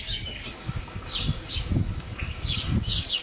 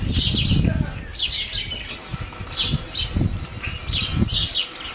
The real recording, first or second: second